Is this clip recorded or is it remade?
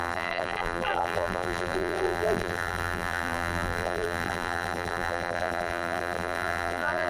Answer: remade